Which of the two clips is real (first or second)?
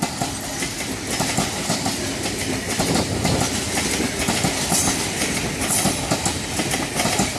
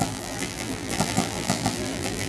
first